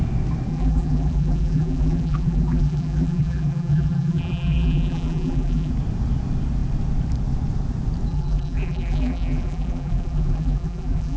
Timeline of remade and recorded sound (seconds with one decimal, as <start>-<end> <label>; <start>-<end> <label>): 0.0-0.5 recorded; 0.5-5.7 remade; 5.7-8.1 recorded; 8.1-11.2 remade